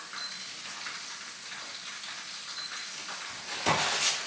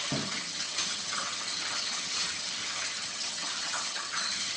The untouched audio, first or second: first